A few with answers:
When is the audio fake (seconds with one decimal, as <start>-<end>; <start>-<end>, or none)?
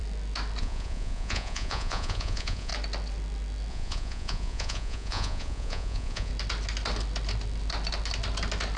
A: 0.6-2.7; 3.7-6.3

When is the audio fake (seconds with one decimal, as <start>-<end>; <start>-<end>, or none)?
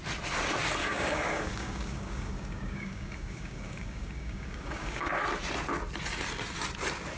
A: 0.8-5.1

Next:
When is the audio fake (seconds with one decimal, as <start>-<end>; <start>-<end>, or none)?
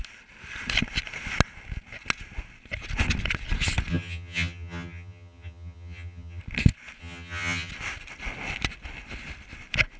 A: 3.9-6.4; 7.0-7.7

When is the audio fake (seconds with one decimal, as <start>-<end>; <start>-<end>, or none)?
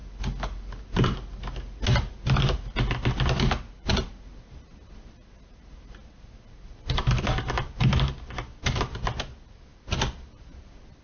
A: none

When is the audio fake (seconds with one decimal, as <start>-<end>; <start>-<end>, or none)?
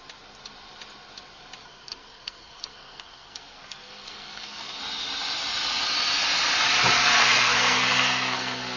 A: 1.6-4.8; 7.2-8.8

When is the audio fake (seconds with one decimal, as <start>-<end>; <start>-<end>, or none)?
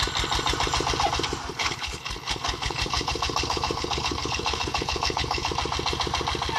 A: 1.5-5.5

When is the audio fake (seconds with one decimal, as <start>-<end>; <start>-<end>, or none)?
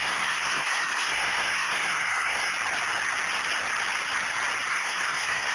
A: 0.0-2.5; 4.7-5.5